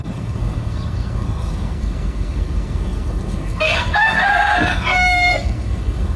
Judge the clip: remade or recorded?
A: remade